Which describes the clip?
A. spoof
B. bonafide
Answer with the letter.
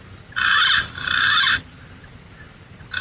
B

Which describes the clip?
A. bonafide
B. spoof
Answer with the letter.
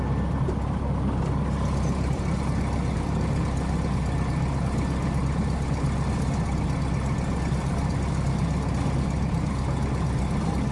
A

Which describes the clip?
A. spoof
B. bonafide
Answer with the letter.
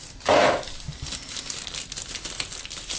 B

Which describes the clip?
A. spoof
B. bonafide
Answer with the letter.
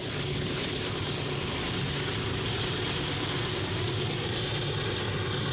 B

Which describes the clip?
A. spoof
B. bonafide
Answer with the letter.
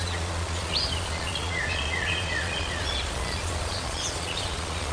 A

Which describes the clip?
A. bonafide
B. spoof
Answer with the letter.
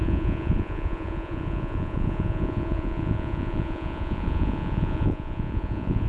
B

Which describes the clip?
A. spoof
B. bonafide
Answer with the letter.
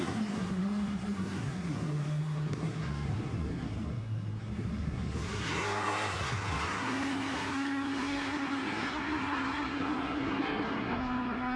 A